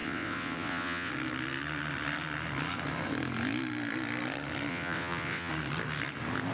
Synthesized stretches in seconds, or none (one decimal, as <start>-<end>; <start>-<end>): 0.0-1.1; 4.7-5.5